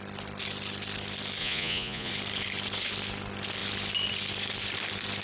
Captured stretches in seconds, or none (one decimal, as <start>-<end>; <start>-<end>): 0.0-1.4; 2.1-5.2